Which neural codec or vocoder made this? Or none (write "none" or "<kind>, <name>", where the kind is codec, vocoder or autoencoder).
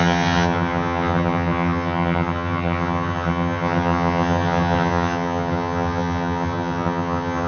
vocoder, HiFi-GAN